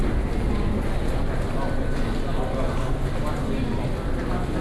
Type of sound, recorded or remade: recorded